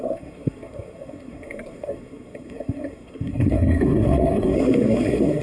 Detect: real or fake fake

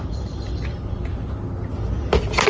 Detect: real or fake real